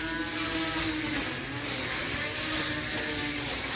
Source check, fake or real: real